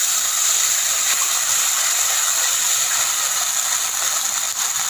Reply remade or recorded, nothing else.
recorded